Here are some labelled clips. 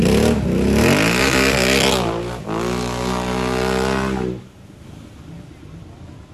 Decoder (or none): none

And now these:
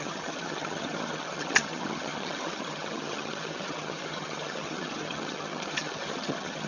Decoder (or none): vocoder, HiFi-GAN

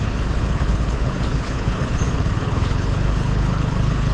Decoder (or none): codec, HILCodec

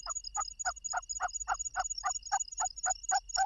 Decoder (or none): none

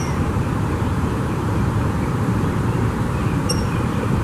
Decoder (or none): vocoder, BigVGAN v2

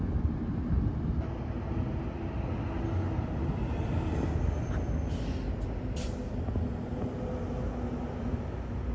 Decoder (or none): none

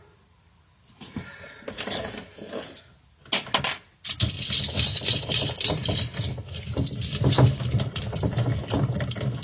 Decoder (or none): none